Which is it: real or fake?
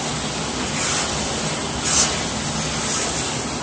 real